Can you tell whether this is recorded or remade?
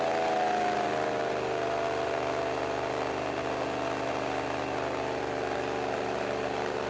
recorded